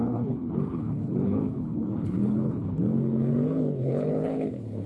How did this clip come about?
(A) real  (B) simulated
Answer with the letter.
B